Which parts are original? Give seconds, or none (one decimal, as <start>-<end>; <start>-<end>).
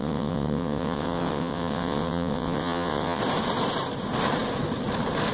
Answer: 3.2-5.3